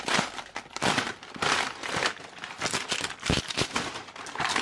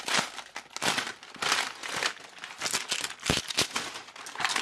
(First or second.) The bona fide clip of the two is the second